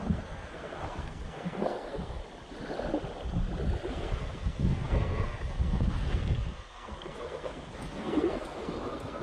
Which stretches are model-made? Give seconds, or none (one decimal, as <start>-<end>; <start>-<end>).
0.0-2.2; 3.9-9.2

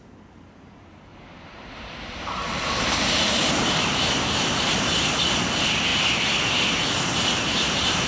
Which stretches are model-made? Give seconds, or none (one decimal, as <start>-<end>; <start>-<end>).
1.1-4.3

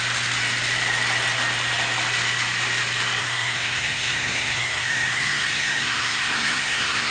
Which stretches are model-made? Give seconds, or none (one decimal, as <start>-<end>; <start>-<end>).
3.2-7.1

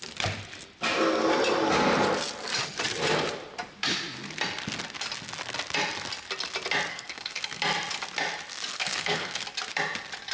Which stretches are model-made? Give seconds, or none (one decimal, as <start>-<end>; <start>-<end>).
6.9-7.6; 8.7-9.4

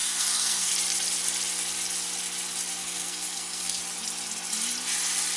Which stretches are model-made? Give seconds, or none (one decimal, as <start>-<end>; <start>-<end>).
0.0-0.7; 2.8-3.8

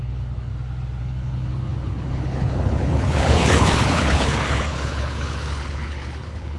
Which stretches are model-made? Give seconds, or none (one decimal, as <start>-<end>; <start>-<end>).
0.0-0.5; 1.0-6.6